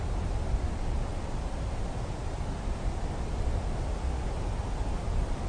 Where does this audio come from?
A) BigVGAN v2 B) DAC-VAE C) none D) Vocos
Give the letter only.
C